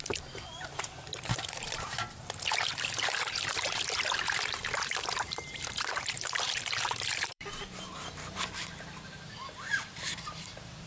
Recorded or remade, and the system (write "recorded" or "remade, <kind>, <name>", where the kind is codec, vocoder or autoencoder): remade, vocoder, BigVGAN v2